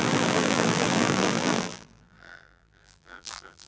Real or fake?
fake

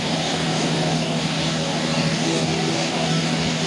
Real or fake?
fake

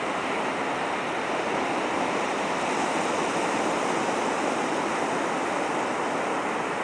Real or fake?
real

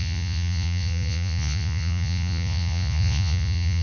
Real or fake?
fake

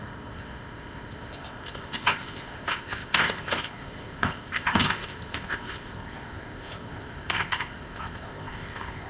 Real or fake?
fake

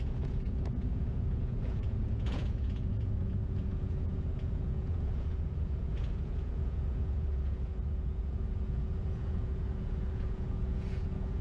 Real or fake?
fake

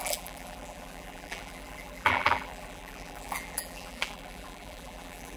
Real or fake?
fake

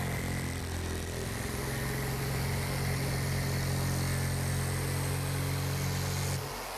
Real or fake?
real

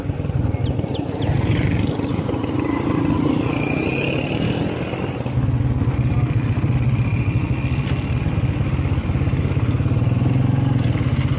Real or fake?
real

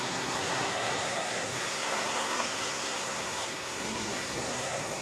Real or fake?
fake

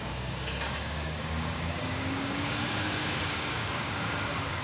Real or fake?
fake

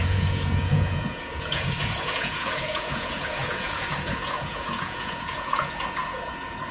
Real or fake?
fake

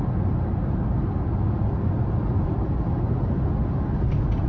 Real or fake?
real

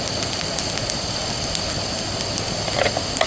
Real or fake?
real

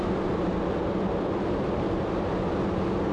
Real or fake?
real